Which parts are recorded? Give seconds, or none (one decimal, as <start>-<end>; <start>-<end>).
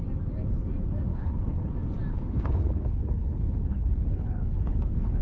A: 0.0-1.1; 1.7-2.1